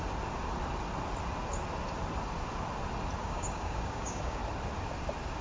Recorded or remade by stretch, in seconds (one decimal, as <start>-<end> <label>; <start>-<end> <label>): 0.0-3.2 recorded; 3.2-4.4 remade; 4.4-5.4 recorded